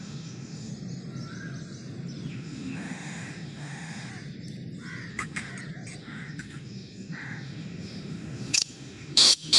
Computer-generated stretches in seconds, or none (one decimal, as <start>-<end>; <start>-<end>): 0.0-0.7; 2.3-4.1; 5.1-5.5; 6.0-9.6